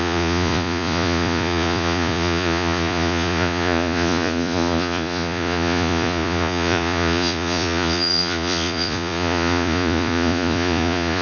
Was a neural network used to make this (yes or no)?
yes